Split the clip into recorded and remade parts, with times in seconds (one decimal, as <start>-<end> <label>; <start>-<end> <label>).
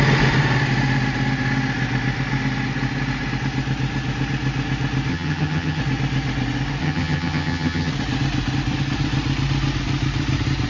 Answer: 0.0-5.1 recorded; 5.1-5.8 remade; 5.8-6.8 recorded; 6.8-7.9 remade; 7.9-10.7 recorded